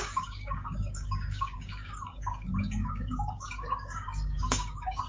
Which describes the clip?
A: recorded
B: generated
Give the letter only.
B